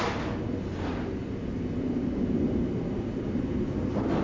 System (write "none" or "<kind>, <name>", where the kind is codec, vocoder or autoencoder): none